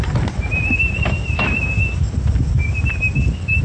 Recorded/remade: recorded